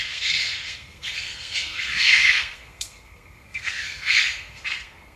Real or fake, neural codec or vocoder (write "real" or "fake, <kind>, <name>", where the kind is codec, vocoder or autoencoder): fake, codec, SNAC